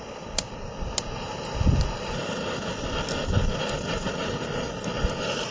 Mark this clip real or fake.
real